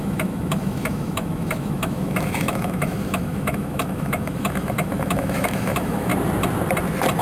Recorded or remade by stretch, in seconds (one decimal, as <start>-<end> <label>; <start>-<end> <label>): 0.0-6.1 remade; 6.1-7.2 recorded

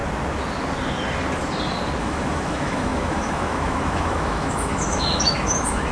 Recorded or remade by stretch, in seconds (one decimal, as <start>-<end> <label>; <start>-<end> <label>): 0.0-2.0 recorded; 2.0-5.9 remade

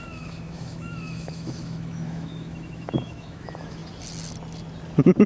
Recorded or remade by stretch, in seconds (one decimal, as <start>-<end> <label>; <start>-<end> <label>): 0.0-3.8 remade; 3.8-5.3 recorded

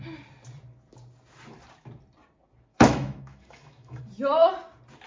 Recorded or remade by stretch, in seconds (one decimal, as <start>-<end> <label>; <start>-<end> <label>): 0.0-2.7 recorded; 2.7-4.0 remade; 4.0-5.1 recorded

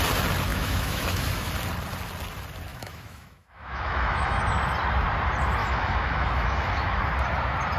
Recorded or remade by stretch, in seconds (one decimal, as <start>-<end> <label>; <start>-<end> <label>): 0.0-0.5 recorded; 0.5-1.5 remade; 1.5-2.7 recorded; 2.7-4.4 remade; 4.4-5.6 recorded; 5.6-7.0 remade; 7.0-7.8 recorded

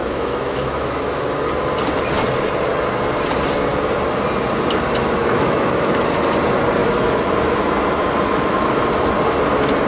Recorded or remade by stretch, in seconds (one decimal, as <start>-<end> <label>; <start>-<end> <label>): 0.0-1.4 remade; 1.4-5.2 recorded; 5.2-6.0 remade; 6.0-6.8 recorded; 6.8-7.3 remade; 7.3-9.9 recorded

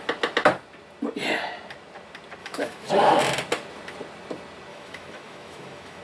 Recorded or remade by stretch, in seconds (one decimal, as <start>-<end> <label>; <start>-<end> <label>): 0.0-2.4 recorded; 2.4-2.9 remade; 2.9-4.7 recorded; 4.7-6.0 remade